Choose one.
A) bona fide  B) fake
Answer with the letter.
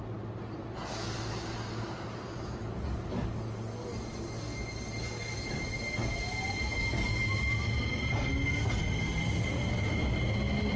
A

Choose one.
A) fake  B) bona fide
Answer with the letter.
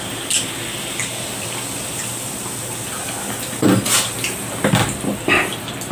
B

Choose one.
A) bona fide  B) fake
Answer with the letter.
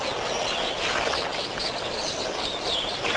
A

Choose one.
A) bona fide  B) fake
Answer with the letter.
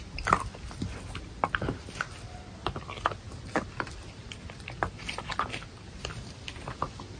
A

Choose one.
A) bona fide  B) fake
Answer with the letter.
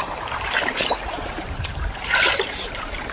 B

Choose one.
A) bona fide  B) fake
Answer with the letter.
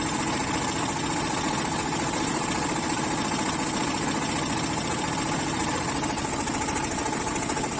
A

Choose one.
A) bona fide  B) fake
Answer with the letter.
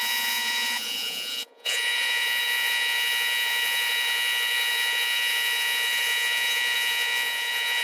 B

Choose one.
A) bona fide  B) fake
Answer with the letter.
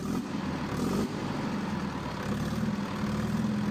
A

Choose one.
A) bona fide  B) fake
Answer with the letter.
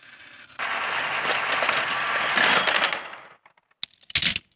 A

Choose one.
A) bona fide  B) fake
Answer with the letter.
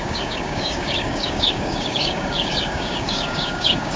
B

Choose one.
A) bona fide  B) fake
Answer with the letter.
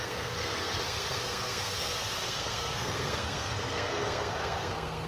B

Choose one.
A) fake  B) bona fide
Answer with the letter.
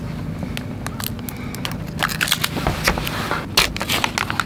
B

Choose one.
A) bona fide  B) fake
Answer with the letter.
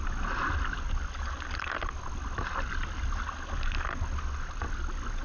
A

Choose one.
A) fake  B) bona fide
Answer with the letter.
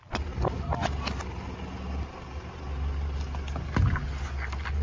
B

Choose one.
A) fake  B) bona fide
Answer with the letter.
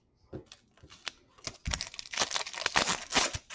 B